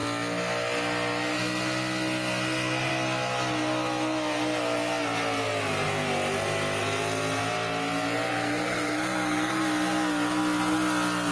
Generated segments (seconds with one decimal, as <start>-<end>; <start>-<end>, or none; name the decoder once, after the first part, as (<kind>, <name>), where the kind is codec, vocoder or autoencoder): 8.3-9.6 (codec, SNAC)